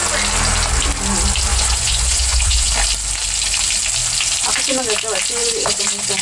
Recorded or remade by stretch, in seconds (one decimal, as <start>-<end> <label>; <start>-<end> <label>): 0.0-1.5 recorded; 1.5-2.7 remade; 2.7-5.4 recorded; 5.4-6.2 remade